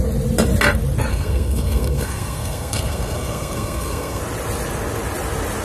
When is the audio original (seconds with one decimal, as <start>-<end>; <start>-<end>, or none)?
0.0-1.1; 4.2-5.6